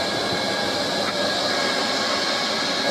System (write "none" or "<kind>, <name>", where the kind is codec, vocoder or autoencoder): none